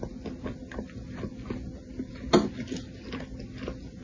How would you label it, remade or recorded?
recorded